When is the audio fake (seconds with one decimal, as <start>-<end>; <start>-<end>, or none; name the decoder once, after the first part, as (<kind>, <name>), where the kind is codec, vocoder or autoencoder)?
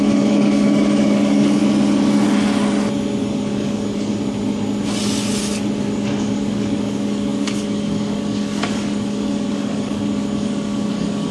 0.0-1.6 (codec, DAC); 3.2-4.1; 5.8-11.3